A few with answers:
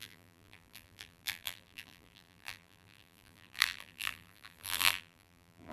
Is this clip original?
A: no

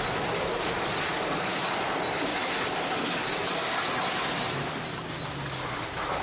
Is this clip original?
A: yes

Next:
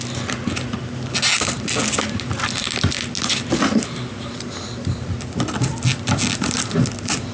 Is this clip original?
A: yes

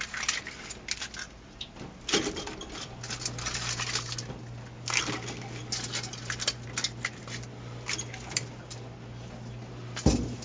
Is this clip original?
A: yes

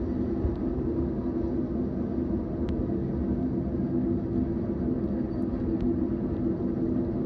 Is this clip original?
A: yes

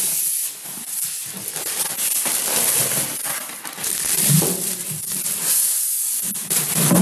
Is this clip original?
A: no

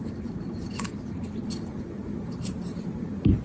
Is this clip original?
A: no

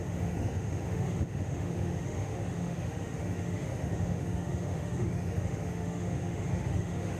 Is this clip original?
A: no